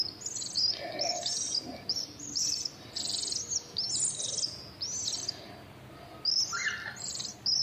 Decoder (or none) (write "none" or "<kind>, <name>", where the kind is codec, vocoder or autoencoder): none